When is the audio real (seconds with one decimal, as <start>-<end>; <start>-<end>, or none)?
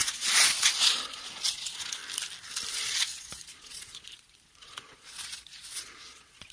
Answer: 2.0-2.7